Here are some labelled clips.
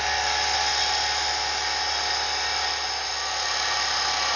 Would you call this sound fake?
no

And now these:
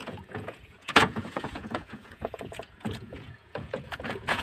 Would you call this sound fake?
yes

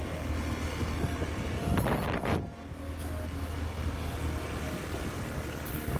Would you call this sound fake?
no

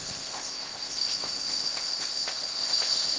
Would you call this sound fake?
yes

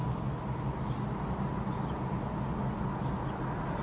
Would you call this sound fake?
no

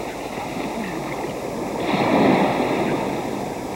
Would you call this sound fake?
no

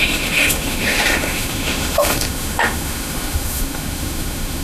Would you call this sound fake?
yes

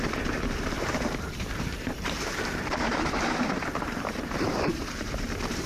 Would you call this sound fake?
yes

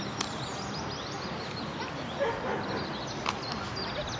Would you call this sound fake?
no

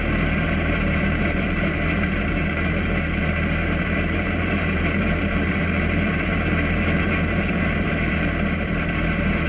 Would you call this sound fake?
yes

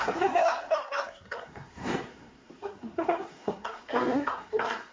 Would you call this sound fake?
yes